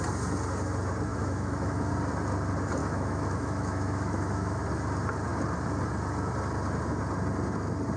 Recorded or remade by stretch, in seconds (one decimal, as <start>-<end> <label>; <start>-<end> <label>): 0.0-1.1 recorded; 1.1-1.9 remade; 1.9-2.8 recorded; 2.8-4.6 remade; 4.6-8.0 recorded

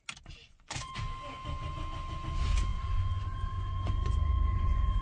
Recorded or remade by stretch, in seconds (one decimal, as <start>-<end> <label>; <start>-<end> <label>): 0.0-0.4 recorded; 0.4-0.9 remade; 0.9-2.7 recorded; 2.7-5.0 remade

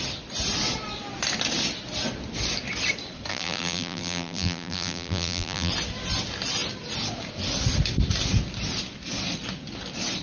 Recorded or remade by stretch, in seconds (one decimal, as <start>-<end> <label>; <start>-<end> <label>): 0.0-3.3 recorded; 3.3-5.7 remade; 5.7-10.2 recorded